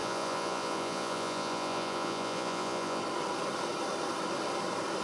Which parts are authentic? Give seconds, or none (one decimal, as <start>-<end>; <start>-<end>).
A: 3.0-5.0